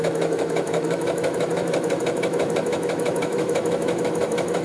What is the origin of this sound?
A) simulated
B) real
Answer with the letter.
A